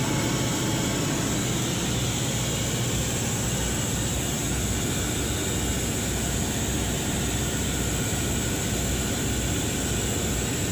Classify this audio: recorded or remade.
recorded